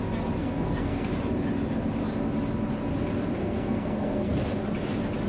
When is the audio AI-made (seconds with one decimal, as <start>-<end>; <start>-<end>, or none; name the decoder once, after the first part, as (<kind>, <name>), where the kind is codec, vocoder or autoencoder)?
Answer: 0.4-1.1 (codec, SNAC); 3.4-4.3